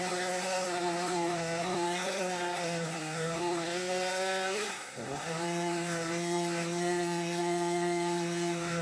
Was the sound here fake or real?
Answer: fake